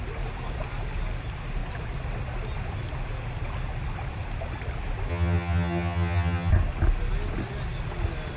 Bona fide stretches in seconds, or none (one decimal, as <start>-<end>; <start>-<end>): 0.0-5.1; 6.5-8.4